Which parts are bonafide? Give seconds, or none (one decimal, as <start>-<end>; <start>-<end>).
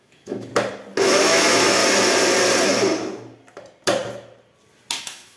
0.5-1.0; 1.8-5.0